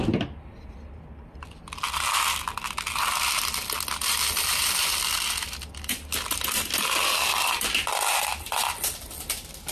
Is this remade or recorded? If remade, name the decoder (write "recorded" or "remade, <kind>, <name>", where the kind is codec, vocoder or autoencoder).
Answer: recorded